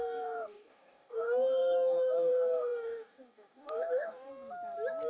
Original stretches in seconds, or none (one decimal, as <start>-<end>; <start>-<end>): 4.3-5.1